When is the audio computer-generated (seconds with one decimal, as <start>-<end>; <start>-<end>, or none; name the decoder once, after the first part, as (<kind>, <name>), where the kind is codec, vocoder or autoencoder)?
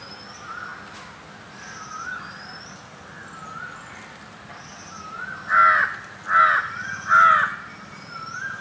none